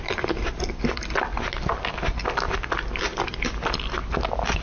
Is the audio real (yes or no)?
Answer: yes